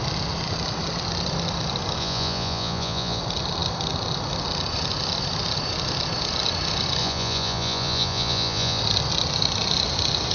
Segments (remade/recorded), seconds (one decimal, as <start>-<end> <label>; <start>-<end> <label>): 0.0-2.0 recorded; 2.0-3.2 remade; 3.2-7.0 recorded; 7.0-8.8 remade; 8.8-10.3 recorded